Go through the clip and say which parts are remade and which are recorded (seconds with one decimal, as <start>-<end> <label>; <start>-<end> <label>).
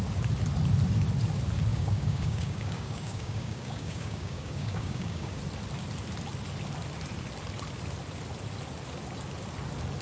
0.0-1.7 recorded; 1.7-5.4 remade; 5.4-10.0 recorded